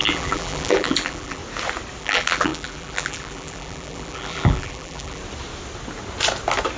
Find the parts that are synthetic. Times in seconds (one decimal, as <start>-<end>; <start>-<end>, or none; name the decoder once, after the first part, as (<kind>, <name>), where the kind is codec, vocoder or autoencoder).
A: 0.0-1.4 (vocoder, BigVGAN v2); 2.0-5.2